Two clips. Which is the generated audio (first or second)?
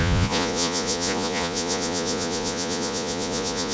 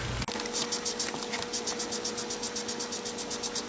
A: first